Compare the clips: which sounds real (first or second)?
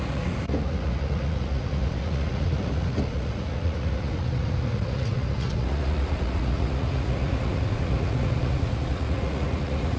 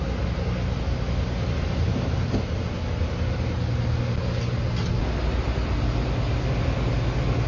second